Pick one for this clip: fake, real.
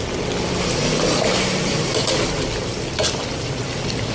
real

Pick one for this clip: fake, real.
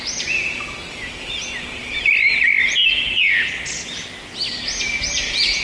real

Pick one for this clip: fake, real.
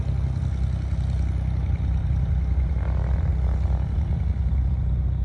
real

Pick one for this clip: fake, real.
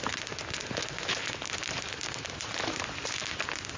real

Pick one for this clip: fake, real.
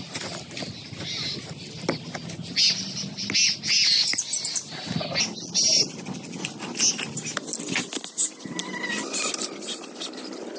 real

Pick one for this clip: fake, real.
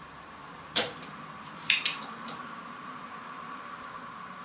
fake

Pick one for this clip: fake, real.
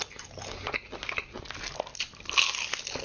real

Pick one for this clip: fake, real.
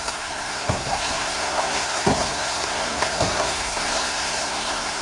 fake